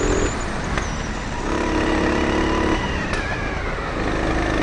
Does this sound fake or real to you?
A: real